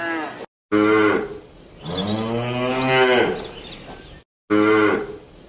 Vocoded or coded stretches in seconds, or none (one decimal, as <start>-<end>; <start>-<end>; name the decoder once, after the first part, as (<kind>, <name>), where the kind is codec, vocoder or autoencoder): none